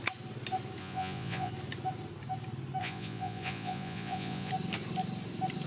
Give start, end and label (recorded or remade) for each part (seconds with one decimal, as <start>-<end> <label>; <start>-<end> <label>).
0.0-0.8 recorded; 0.8-1.5 remade; 1.5-2.8 recorded; 2.8-4.5 remade; 4.5-5.7 recorded